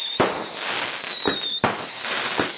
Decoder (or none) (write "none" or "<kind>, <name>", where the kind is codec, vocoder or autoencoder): none